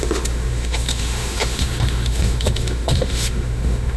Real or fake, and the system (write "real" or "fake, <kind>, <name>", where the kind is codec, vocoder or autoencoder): fake, autoencoder, DAC-VAE